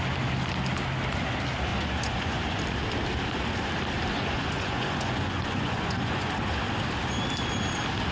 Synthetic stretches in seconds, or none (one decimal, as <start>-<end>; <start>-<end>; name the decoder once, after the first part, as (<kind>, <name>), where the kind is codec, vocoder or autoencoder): 1.7-2.6 (vocoder, Vocos); 4.1-6.3

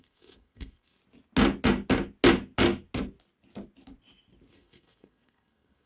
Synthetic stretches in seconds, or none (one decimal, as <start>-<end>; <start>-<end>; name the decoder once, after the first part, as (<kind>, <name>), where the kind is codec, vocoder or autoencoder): 0.0-1.0 (codec, SNAC); 4.5-5.9